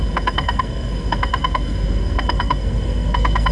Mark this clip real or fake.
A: fake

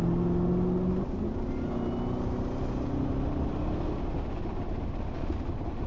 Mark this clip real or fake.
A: real